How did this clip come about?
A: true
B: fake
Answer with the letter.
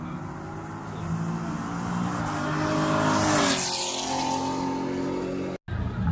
A